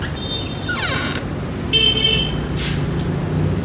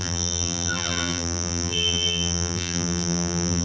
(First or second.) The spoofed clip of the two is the second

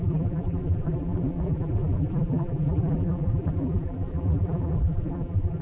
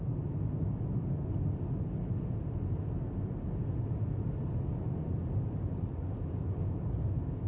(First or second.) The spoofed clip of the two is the first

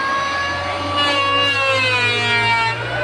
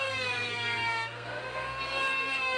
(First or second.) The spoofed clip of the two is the second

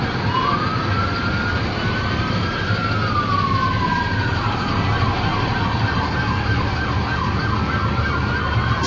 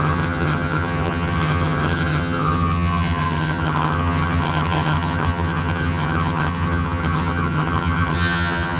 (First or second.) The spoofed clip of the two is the second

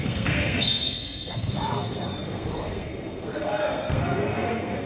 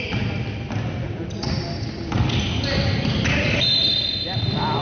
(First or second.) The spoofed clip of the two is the first